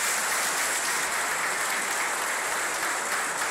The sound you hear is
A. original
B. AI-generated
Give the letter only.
A